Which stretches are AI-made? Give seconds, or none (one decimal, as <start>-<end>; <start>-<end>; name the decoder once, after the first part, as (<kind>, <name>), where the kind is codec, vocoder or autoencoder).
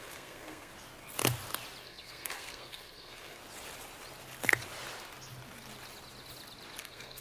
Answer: 0.0-0.7 (codec, SNAC); 1.8-3.4; 6.8-7.2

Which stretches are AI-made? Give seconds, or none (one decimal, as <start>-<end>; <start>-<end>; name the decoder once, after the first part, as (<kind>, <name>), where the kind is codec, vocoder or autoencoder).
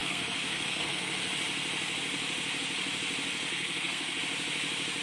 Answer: 0.0-1.3 (codec, SNAC); 3.5-4.2